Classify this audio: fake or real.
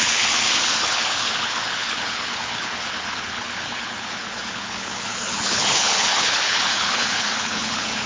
fake